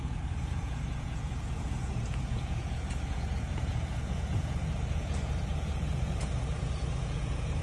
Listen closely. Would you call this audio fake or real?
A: fake